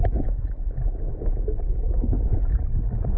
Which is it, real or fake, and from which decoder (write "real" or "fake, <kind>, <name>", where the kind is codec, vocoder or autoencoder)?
real